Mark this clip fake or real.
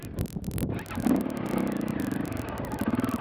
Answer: real